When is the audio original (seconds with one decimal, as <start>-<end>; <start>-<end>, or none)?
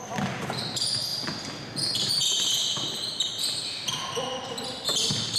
0.0-5.4